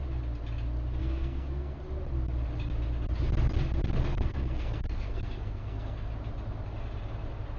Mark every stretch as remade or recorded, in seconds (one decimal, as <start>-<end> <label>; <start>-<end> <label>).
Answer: 0.0-1.0 recorded; 1.0-1.8 remade; 1.8-4.1 recorded; 4.1-6.1 remade; 6.1-7.6 recorded